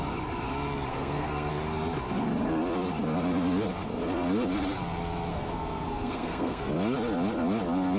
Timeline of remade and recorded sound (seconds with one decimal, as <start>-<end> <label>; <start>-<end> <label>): 0.0-0.9 recorded; 0.9-1.5 remade; 1.5-5.3 recorded; 5.3-6.6 remade; 6.6-8.0 recorded